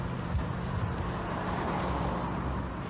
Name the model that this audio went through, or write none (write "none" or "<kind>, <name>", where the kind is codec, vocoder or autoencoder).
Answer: none